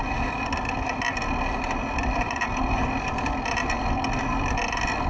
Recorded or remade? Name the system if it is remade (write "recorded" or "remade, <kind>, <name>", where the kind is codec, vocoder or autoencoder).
recorded